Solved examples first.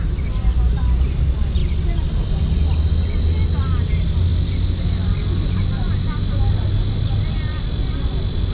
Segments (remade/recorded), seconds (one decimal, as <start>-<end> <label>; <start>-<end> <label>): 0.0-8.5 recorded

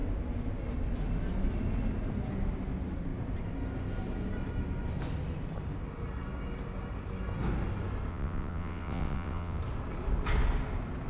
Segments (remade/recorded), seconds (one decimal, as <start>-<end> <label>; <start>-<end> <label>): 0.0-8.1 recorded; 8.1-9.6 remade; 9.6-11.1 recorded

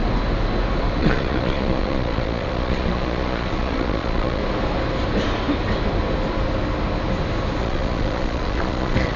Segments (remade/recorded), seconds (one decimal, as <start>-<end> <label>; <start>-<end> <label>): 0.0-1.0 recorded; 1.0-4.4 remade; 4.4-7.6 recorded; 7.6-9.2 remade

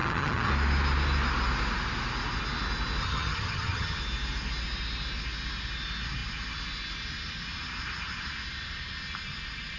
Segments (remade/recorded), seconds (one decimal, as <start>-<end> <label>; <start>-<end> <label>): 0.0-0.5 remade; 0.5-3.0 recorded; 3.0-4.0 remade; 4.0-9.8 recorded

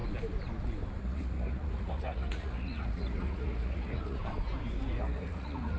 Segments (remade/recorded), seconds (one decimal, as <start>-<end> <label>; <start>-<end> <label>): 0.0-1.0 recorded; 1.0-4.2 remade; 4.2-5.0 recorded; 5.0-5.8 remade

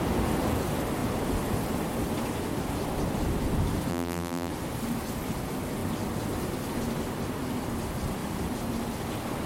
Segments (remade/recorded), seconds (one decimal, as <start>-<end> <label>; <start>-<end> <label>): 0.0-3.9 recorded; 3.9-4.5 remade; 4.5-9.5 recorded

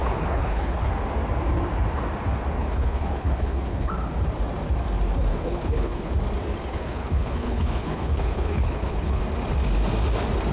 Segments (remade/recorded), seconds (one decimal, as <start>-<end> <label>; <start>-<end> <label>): 0.0-0.9 remade; 0.9-2.6 recorded; 2.6-3.9 remade; 3.9-5.3 recorded; 5.3-6.1 remade; 6.1-6.7 recorded; 6.7-9.2 remade; 9.2-10.5 recorded